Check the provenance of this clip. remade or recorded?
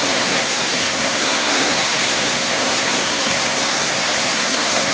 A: remade